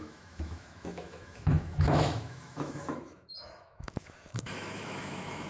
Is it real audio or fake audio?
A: fake